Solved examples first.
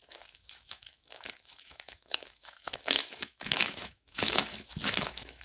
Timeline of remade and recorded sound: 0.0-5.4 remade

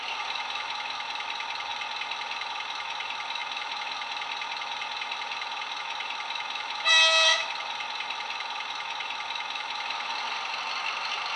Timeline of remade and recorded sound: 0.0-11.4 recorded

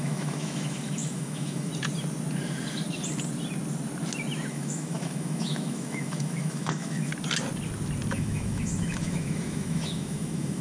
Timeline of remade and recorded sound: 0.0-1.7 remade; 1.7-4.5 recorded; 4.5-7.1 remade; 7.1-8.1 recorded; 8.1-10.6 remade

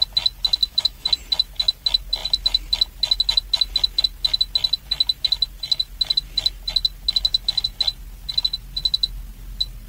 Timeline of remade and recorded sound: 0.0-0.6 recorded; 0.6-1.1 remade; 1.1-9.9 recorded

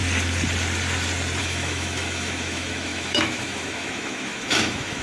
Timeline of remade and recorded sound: 0.0-1.4 recorded; 1.4-5.0 remade

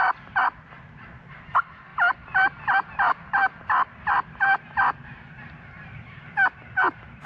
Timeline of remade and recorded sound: 0.0-7.3 recorded

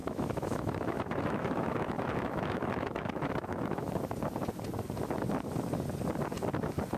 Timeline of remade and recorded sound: 0.0-3.9 remade; 3.9-7.0 recorded

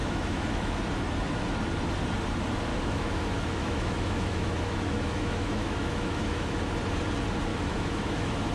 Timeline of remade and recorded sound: 0.0-0.8 remade; 0.8-2.7 recorded; 2.7-6.6 remade; 6.6-7.5 recorded; 7.5-8.5 remade